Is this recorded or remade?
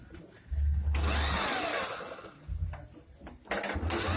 recorded